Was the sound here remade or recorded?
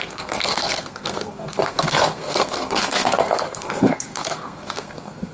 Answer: remade